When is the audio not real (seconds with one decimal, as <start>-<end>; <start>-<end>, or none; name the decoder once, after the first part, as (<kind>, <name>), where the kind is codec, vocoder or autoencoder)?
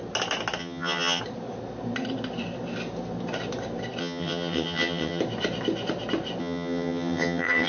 0.6-1.2 (vocoder, HiFi-GAN); 4.0-5.2; 6.4-7.7